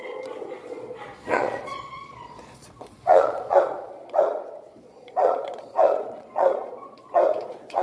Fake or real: fake